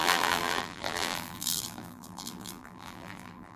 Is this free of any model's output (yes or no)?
no